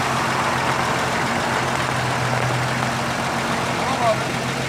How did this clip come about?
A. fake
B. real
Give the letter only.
B